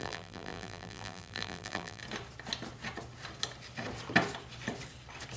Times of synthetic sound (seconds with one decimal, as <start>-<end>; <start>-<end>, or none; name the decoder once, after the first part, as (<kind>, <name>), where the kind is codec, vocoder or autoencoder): 0.0-2.0 (vocoder, BigVGAN v2)

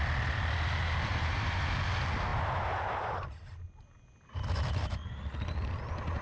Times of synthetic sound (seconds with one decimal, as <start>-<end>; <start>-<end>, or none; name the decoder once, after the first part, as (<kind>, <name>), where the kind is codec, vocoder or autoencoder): 1.1-1.6 (vocoder, BigVGAN v2)